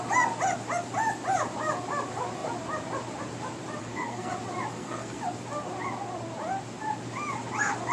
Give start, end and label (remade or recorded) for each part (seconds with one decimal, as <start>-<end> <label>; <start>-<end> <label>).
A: 0.0-3.8 recorded; 3.8-4.3 remade; 4.3-4.7 recorded; 4.7-5.2 remade; 5.2-7.9 recorded

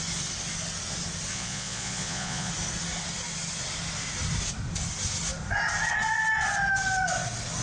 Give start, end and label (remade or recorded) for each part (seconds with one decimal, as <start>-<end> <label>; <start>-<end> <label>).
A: 0.0-1.3 recorded; 1.3-2.5 remade; 2.5-7.6 recorded

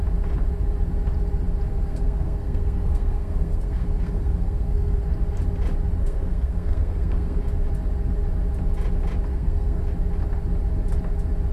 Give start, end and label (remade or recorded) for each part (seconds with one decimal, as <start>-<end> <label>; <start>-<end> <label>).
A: 0.0-1.7 recorded; 1.7-5.0 remade; 5.0-6.0 recorded; 6.0-7.4 remade; 7.4-9.3 recorded; 9.3-9.8 remade; 9.8-11.5 recorded